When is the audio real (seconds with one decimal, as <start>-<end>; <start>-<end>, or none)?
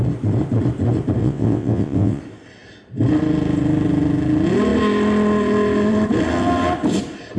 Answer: 0.0-1.2; 2.2-7.4